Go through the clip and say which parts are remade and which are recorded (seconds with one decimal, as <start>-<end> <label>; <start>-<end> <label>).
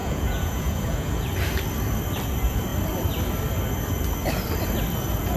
0.0-1.2 remade; 1.2-5.4 recorded